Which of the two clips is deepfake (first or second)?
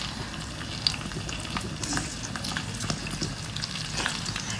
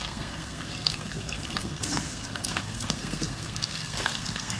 second